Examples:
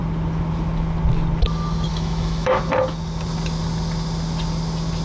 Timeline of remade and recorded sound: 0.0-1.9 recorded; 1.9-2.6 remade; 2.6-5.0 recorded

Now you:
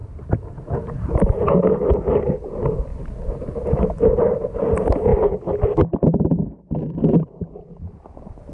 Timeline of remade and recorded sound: 0.0-2.9 remade; 2.9-3.8 recorded; 3.8-5.1 remade; 5.1-6.0 recorded; 6.0-8.5 remade

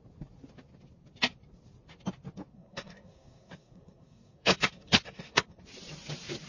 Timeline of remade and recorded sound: 0.0-2.5 recorded; 2.5-5.6 remade; 5.6-6.5 recorded

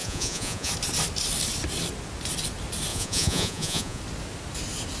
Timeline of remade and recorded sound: 0.0-0.7 remade; 0.7-2.9 recorded; 2.9-4.0 remade; 4.0-5.0 recorded

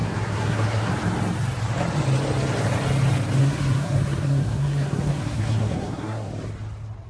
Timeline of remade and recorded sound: 0.0-0.9 remade; 0.9-3.4 recorded; 3.4-6.3 remade; 6.3-7.1 recorded